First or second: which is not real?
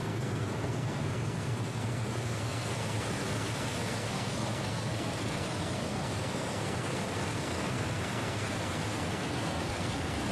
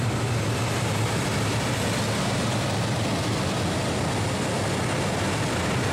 first